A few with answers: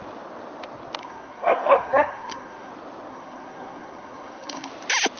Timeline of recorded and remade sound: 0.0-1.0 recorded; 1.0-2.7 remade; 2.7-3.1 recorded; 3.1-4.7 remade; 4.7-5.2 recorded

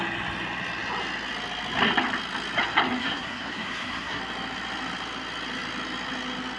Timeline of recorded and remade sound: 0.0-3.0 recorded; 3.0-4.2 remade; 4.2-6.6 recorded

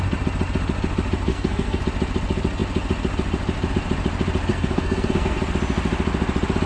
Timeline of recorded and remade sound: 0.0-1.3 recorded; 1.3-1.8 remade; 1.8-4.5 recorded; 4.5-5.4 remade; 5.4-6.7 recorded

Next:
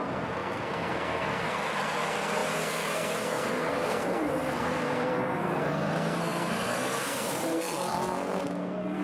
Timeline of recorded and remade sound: 0.0-9.0 remade